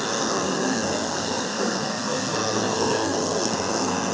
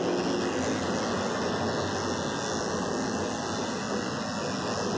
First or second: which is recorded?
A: second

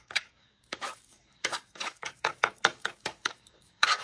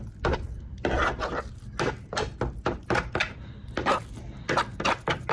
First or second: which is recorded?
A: second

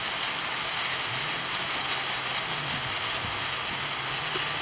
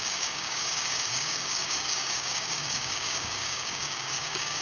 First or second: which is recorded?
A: first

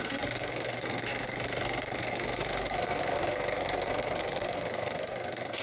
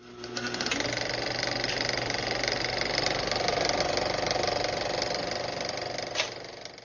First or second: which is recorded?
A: second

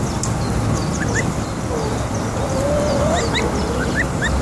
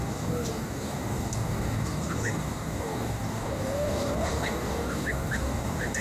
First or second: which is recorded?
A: first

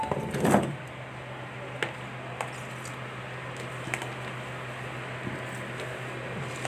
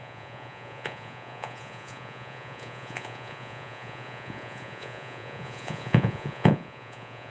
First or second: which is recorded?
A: first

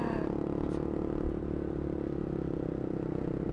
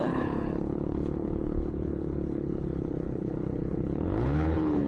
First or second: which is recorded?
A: first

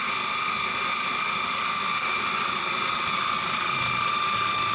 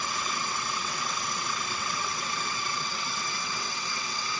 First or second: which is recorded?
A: first